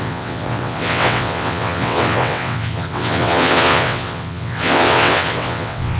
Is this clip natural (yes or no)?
no